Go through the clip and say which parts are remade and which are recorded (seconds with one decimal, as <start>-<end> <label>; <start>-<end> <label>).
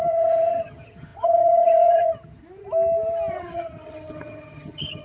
0.0-2.4 remade; 2.4-3.3 recorded; 3.3-5.0 remade